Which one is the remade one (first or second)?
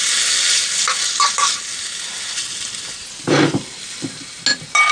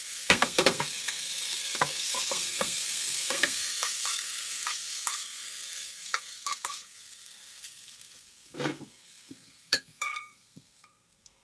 second